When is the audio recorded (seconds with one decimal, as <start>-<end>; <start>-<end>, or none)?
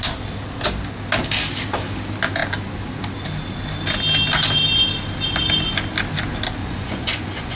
0.0-6.6